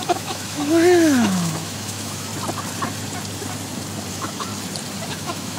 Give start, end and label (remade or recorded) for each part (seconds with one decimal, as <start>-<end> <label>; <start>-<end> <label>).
0.0-2.3 remade; 2.3-4.1 recorded; 4.1-4.5 remade; 4.5-5.1 recorded; 5.1-5.6 remade